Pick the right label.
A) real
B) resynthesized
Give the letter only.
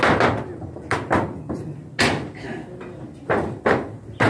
A